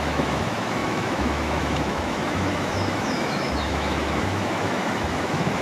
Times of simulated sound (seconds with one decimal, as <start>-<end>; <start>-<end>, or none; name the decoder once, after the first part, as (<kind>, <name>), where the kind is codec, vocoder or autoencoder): 0.0-5.6 (autoencoder, DAC-VAE)